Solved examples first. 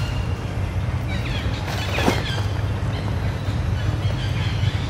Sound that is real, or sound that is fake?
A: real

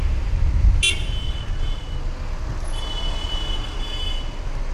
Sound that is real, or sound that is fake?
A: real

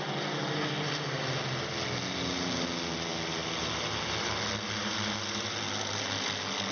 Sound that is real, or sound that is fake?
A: real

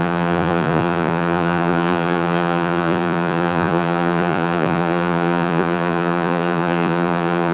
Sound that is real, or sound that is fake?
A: fake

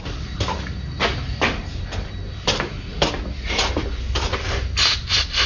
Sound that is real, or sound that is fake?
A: fake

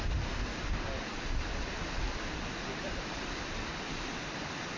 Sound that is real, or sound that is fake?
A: real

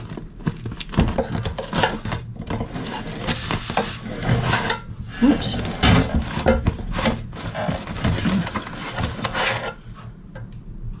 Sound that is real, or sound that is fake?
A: real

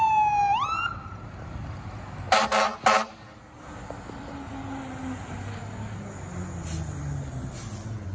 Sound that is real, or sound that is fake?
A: real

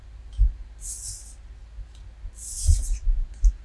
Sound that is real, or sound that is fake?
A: real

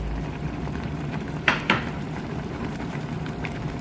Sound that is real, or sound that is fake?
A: fake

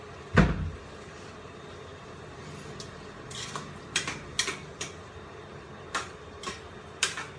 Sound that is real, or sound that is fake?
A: real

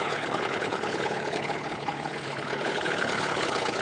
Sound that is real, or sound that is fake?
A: fake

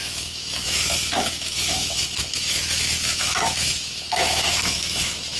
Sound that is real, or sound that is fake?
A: fake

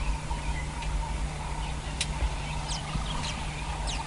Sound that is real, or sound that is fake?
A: real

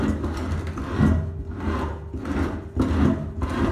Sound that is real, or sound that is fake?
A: real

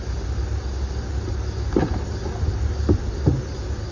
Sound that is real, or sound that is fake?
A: real